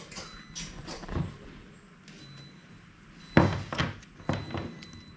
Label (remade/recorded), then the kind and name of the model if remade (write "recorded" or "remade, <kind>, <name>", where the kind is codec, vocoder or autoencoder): recorded